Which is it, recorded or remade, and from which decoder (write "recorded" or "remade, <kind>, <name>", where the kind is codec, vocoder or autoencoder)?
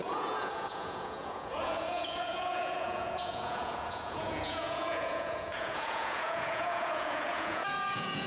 remade, vocoder, Vocos